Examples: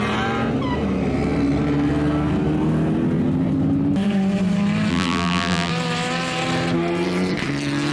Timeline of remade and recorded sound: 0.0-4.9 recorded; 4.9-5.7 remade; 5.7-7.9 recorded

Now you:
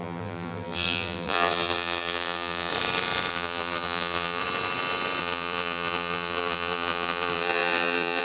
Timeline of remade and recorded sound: 0.0-2.7 remade; 2.7-3.3 recorded; 3.3-4.4 remade; 4.4-5.2 recorded; 5.2-8.2 remade

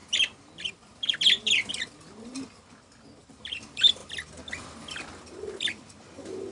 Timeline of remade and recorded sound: 0.0-0.7 recorded; 0.7-4.0 remade; 4.0-5.6 recorded; 5.6-6.5 remade

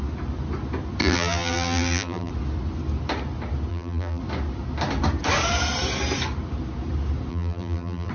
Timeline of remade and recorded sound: 0.0-1.0 recorded; 1.0-2.3 remade; 2.3-3.7 recorded; 3.7-4.2 remade; 4.2-7.3 recorded; 7.3-8.1 remade

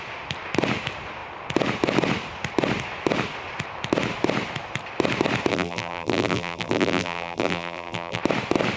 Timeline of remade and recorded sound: 0.0-5.5 recorded; 5.5-8.2 remade; 8.2-8.8 recorded

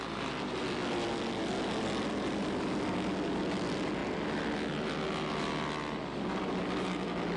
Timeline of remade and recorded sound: 0.0-7.4 recorded

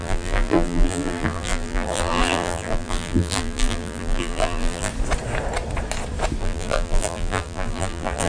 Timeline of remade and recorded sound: 0.0-4.9 remade; 4.9-6.4 recorded; 6.4-8.3 remade

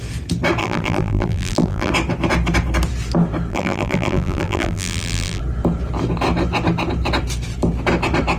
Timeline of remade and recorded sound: 0.0-0.6 recorded; 0.6-1.9 remade; 1.9-3.5 recorded; 3.5-5.4 remade; 5.4-8.4 recorded